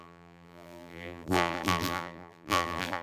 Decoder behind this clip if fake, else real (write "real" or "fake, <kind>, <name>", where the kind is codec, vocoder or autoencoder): fake, vocoder, BigVGAN v2